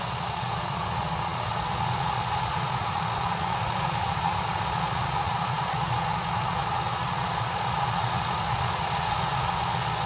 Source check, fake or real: fake